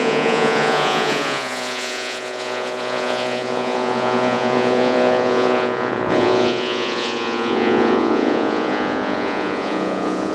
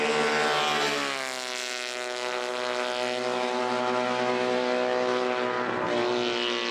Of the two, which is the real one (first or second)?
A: second